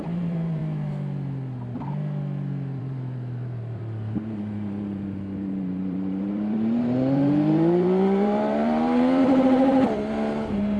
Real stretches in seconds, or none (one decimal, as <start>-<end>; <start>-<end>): 0.6-2.8